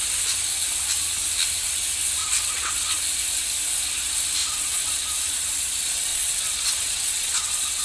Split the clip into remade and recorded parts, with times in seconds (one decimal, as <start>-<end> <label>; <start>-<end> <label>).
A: 0.0-2.2 recorded; 2.2-3.0 remade; 3.0-4.4 recorded; 4.4-4.9 remade; 4.9-6.1 recorded; 6.1-7.8 remade

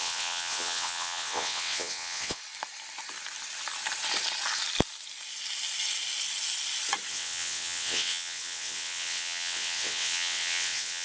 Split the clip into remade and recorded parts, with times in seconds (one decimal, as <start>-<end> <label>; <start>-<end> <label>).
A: 0.0-2.4 remade; 2.4-7.1 recorded; 7.1-11.0 remade

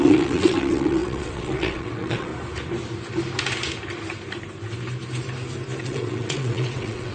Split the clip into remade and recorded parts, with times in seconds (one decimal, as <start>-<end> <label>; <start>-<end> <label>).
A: 0.0-2.3 remade; 2.3-5.8 recorded; 5.8-7.1 remade

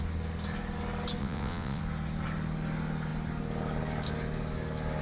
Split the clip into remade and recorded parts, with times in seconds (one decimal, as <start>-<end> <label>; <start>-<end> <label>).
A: 0.0-1.2 recorded; 1.2-1.8 remade; 1.8-5.0 recorded

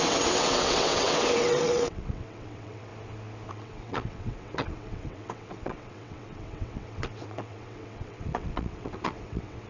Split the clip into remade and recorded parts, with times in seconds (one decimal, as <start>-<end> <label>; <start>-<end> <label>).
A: 0.0-2.9 remade; 2.9-3.5 recorded; 3.5-9.7 remade

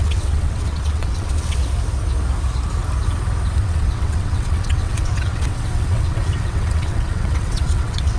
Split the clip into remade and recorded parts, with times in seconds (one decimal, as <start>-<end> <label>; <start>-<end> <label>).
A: 0.0-1.6 remade; 1.6-3.6 recorded; 3.6-8.2 remade

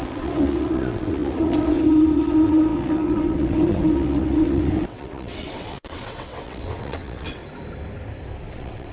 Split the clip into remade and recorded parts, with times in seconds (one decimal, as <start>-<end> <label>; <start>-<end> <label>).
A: 0.0-7.4 remade; 7.4-8.5 recorded; 8.5-8.9 remade

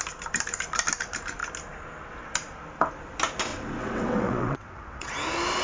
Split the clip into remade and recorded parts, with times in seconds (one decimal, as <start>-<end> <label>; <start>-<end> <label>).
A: 0.0-3.5 recorded; 3.5-5.1 remade; 5.1-5.6 recorded